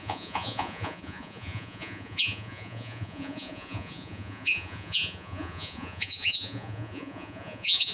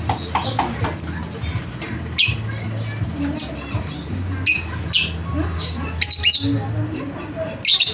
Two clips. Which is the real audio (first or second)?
second